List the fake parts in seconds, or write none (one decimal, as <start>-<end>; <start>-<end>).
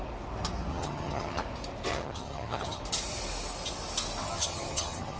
0.7-1.4; 1.9-2.8; 4.2-5.2